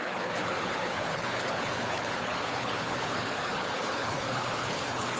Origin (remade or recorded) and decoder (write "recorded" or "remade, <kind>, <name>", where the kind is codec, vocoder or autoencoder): remade, codec, HILCodec